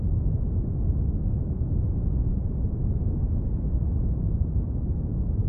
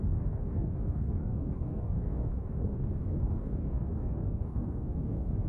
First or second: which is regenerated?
second